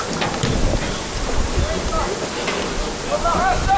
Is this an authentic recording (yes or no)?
yes